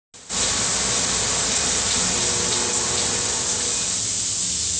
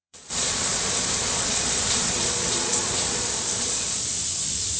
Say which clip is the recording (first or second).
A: first